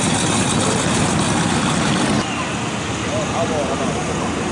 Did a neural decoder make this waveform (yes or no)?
no